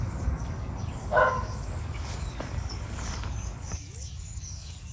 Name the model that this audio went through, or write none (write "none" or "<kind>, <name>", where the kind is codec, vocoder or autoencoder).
codec, DAC